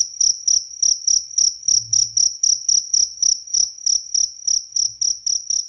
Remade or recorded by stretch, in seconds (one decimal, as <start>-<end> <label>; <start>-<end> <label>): 0.0-3.1 recorded; 3.1-3.7 remade; 3.7-5.7 recorded